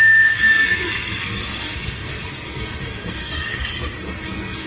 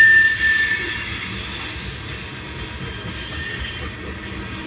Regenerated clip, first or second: first